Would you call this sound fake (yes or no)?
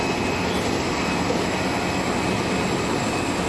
no